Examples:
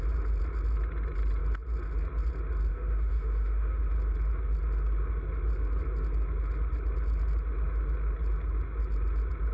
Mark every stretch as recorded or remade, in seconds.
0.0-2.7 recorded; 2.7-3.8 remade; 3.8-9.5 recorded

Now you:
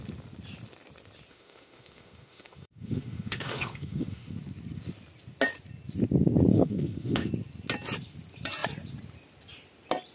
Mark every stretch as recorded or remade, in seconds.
0.0-1.3 recorded; 1.3-4.4 remade; 4.4-6.5 recorded; 6.5-7.3 remade; 7.3-10.1 recorded

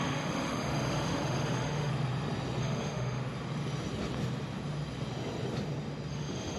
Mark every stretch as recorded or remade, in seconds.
0.0-1.9 remade; 1.9-2.6 recorded; 2.6-3.2 remade; 3.2-6.1 recorded; 6.1-6.6 remade

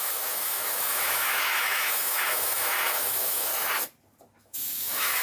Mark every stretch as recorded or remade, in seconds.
0.0-3.5 remade; 3.5-4.4 recorded; 4.4-5.2 remade